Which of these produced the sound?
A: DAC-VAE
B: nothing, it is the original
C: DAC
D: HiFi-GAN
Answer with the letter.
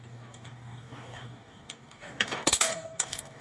C